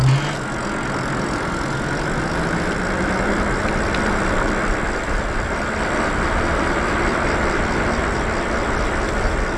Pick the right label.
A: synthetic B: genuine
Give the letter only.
B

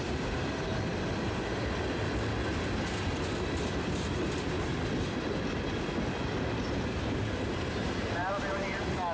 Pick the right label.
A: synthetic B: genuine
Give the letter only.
B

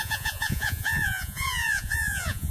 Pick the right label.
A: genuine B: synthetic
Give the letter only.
B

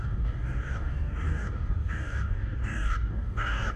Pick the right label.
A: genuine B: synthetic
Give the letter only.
B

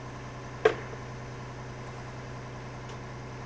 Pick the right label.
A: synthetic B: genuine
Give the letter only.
B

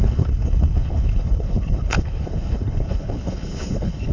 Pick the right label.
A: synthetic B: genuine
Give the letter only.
A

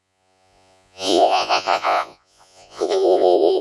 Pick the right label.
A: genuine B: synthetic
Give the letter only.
B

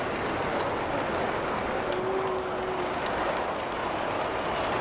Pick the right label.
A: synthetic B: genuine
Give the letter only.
B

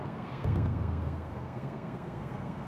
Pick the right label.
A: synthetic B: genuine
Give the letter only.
A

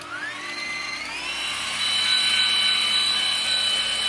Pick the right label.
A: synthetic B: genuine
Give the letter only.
B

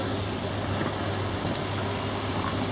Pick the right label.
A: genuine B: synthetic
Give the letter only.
A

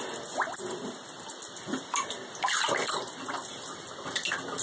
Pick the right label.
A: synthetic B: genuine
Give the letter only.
B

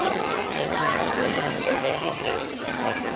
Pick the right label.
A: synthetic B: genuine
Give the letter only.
A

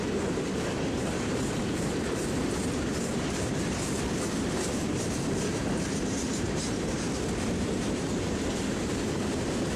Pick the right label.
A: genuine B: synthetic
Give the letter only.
B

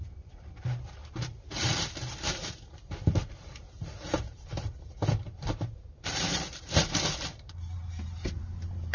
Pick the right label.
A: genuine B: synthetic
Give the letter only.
B